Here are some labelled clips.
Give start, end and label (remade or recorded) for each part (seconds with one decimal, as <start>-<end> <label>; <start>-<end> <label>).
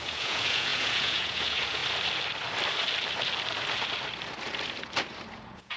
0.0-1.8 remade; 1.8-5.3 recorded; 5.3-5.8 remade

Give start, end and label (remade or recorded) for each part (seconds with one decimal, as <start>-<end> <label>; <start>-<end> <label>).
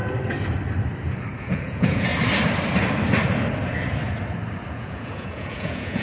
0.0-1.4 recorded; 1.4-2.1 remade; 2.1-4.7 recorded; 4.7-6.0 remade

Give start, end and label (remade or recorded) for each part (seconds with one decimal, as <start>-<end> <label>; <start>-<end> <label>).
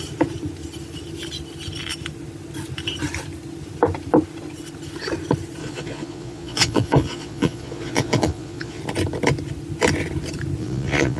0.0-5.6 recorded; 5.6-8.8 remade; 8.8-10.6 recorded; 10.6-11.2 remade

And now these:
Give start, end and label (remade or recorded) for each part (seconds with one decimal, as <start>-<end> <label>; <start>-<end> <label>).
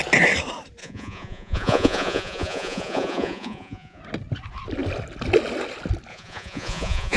0.0-0.8 recorded; 0.8-4.0 remade; 4.0-6.1 recorded; 6.1-7.2 remade